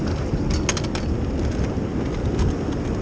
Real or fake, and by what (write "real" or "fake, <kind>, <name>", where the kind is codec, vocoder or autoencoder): real